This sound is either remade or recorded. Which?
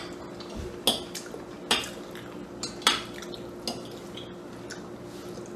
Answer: recorded